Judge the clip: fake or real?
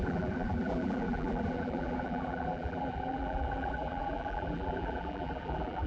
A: fake